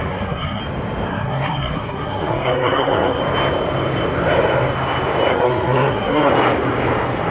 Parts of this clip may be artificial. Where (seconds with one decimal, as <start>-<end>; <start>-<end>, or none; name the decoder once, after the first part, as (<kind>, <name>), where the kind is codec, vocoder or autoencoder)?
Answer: 0.0-0.6 (codec, SNAC); 1.1-3.2; 5.3-6.3